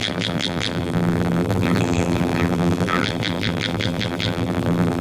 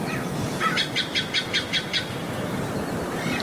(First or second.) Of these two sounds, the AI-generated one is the first